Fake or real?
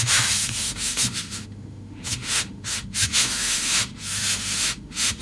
fake